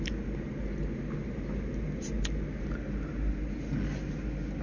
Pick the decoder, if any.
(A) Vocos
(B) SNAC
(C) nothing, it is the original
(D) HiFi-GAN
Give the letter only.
C